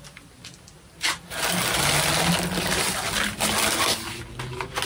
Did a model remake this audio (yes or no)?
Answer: no